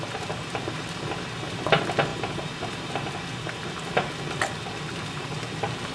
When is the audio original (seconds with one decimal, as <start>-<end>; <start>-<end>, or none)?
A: 0.0-2.1; 3.1-5.9